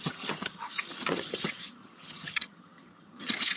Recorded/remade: remade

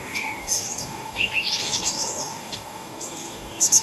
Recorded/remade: remade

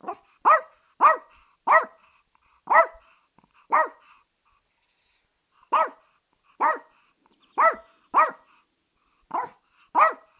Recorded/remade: recorded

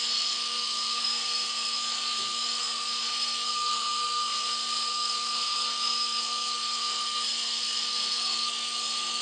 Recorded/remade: remade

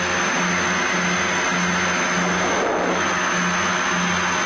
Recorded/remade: recorded